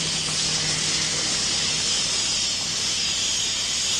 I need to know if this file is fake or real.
real